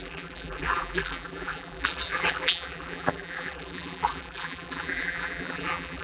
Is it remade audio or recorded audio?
remade